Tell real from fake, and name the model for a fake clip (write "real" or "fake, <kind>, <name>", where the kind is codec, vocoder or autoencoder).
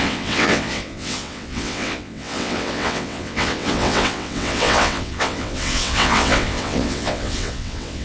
fake, vocoder, WaveNeXt